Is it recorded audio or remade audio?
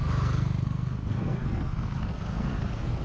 remade